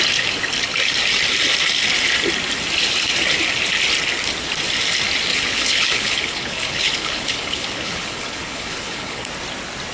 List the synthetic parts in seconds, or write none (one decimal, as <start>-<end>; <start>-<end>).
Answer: 5.3-9.3